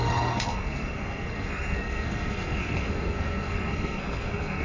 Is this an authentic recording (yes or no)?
no